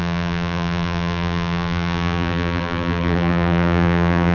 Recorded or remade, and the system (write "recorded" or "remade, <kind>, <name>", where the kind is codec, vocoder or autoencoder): remade, vocoder, BigVGAN v2